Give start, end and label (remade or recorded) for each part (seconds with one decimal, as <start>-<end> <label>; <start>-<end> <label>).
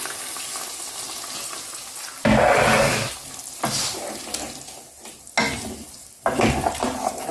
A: 0.0-7.3 recorded